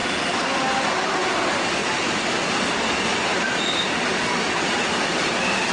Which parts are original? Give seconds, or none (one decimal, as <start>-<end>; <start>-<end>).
0.0-3.3; 4.8-5.7